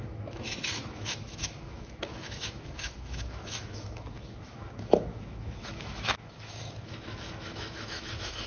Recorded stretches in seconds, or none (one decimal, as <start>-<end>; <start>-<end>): none